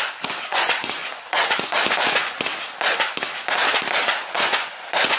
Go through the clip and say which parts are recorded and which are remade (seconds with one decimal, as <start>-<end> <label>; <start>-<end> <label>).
0.0-2.5 remade; 2.5-4.3 recorded; 4.3-5.2 remade